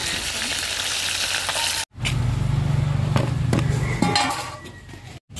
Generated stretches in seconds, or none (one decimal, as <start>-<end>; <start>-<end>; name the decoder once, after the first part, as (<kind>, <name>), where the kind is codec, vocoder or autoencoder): none